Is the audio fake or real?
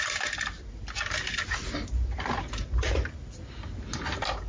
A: real